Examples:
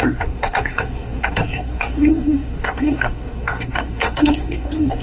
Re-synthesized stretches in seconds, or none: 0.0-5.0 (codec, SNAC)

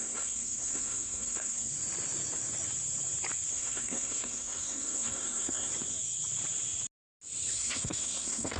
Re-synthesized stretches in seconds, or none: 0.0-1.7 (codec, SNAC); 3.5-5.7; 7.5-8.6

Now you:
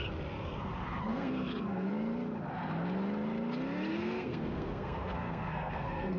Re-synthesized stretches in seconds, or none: 1.1-1.9 (codec, SNAC); 3.9-6.2

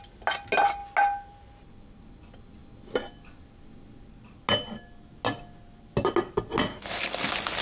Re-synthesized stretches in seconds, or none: none

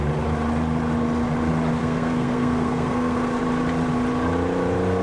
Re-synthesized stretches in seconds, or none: 1.8-3.4 (codec, SNAC)

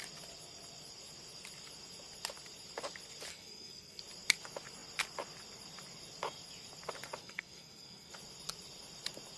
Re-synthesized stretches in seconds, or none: 3.3-4.0 (codec, SNAC); 7.2-8.1